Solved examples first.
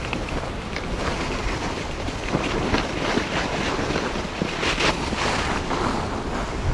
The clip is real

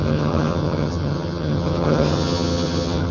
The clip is fake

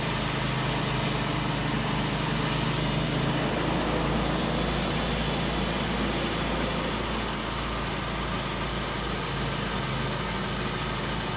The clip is real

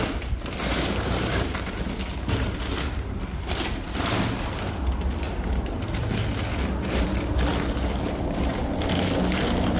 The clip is fake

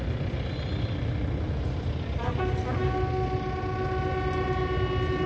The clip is real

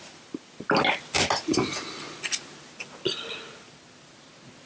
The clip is real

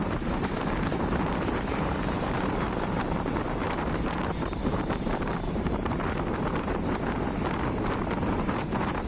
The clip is fake